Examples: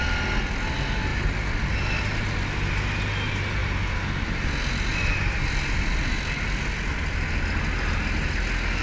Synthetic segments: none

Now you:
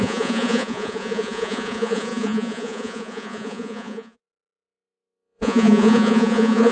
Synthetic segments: 0.0-6.7 (vocoder, Vocos)

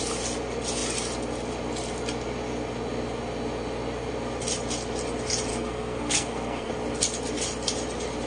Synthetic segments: 5.5-6.7 (codec, SNAC)